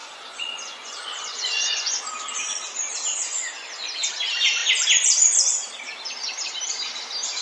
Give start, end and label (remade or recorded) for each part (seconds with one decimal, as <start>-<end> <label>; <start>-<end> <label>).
0.0-2.0 remade; 2.0-7.4 recorded